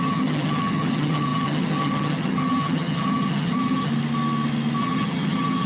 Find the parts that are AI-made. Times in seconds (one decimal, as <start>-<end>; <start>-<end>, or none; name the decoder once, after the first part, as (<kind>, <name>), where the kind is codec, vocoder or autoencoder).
0.0-3.9 (vocoder, HiFi-GAN); 4.8-5.7